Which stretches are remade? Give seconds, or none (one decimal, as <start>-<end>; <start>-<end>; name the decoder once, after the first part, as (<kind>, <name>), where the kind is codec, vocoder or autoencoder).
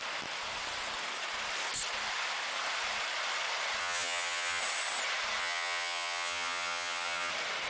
3.8-4.6 (vocoder, HiFi-GAN); 5.4-7.3